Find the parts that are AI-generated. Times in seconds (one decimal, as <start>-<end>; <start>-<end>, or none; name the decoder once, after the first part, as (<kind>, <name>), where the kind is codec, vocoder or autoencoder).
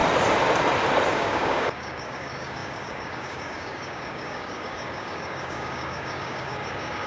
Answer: 1.1-7.1 (codec, DAC)